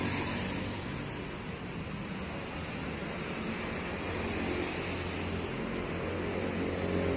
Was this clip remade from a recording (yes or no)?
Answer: no